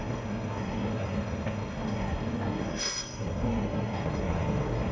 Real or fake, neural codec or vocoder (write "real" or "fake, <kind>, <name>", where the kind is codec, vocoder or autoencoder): fake, codec, SNAC